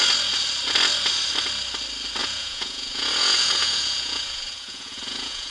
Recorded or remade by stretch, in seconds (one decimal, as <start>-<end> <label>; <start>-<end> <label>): 0.0-2.2 recorded; 2.2-5.5 remade